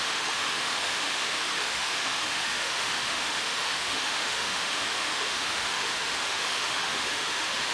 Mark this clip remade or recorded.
remade